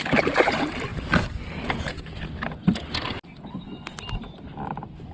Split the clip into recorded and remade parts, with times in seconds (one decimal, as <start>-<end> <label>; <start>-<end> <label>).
0.0-5.1 recorded